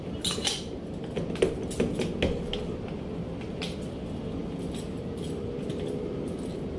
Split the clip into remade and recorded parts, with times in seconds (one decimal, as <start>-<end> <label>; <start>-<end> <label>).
0.0-6.8 recorded